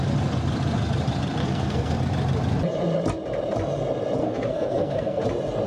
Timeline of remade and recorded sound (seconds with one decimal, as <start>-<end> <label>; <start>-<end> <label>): 0.0-1.4 recorded; 1.4-2.0 remade; 2.0-4.2 recorded; 4.2-5.2 remade; 5.2-5.7 recorded